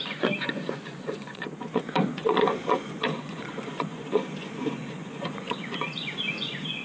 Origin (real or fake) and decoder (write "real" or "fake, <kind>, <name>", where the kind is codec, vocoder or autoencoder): fake, vocoder, Vocos